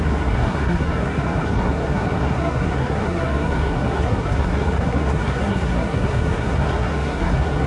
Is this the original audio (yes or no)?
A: no